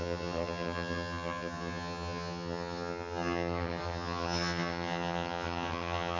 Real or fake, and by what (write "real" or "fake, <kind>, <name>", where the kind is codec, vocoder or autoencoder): fake, vocoder, HiFi-GAN